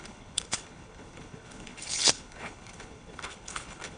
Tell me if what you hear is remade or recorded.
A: remade